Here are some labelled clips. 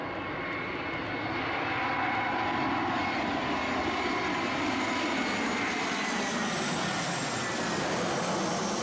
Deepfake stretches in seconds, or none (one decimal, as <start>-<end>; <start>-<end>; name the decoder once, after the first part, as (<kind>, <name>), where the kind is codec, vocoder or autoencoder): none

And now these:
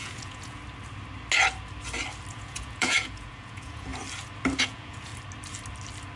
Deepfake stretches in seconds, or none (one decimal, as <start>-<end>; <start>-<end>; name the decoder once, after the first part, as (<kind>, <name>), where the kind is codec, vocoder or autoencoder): 0.0-0.6 (vocoder, Vocos); 2.3-3.9; 4.6-5.1

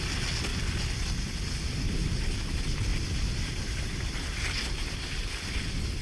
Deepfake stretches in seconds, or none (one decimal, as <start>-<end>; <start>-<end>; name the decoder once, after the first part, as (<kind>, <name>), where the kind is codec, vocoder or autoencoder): none

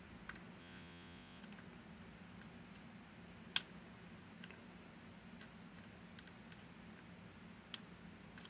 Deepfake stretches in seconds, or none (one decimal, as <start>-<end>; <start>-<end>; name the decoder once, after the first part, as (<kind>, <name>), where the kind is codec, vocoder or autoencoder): 0.6-1.4 (vocoder, Vocos)

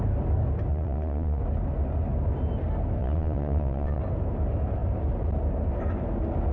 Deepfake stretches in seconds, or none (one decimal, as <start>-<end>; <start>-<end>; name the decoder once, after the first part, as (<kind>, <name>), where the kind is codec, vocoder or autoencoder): 0.7-1.4 (vocoder, Vocos); 3.0-4.0

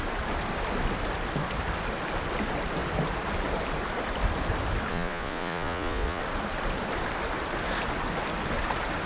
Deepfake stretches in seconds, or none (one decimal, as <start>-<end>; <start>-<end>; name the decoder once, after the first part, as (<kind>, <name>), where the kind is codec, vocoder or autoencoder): 4.9-6.2 (vocoder, Vocos)

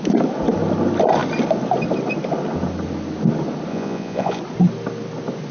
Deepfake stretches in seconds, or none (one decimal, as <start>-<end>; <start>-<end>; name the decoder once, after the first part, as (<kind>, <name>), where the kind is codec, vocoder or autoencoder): 3.7-4.4 (vocoder, Vocos)